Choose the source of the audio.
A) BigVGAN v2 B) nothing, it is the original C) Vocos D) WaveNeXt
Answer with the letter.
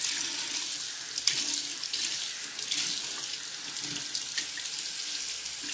B